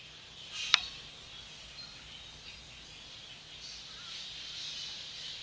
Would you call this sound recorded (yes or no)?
yes